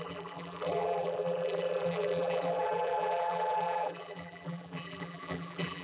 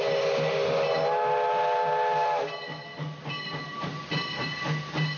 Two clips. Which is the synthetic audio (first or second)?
first